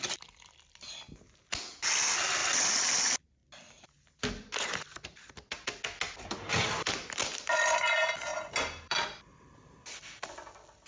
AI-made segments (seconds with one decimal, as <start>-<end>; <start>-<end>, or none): 8.3-9.6